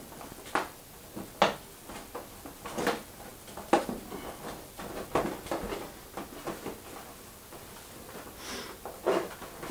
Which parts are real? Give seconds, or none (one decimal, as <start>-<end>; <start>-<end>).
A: 0.0-9.7